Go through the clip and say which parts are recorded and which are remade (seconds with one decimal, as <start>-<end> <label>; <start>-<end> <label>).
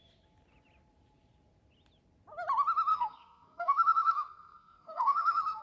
0.0-2.9 recorded; 2.9-5.6 remade